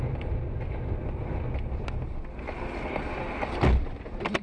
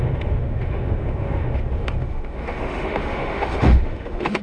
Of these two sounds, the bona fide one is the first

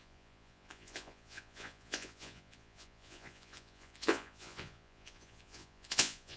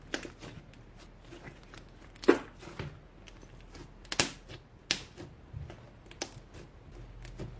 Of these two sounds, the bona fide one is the second